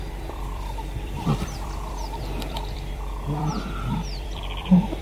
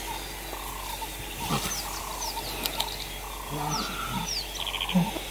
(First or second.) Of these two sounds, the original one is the second